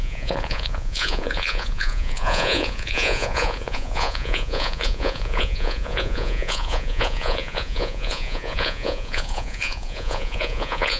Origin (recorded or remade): remade